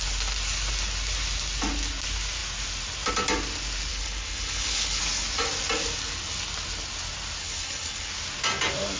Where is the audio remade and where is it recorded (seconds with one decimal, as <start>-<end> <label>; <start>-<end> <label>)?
0.0-3.9 recorded; 3.9-5.0 remade; 5.0-7.4 recorded; 7.4-8.1 remade; 8.1-9.0 recorded